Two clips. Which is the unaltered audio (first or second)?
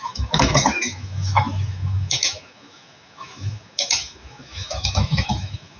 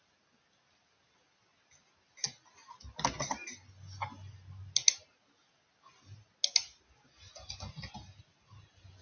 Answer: second